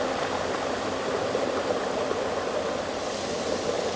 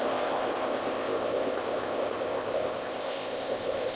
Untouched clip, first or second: first